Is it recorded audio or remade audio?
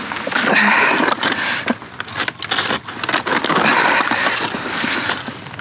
recorded